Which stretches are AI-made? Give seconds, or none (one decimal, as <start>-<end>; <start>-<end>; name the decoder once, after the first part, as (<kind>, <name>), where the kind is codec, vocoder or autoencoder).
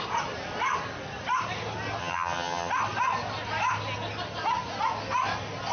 2.0-2.7 (vocoder, HiFi-GAN)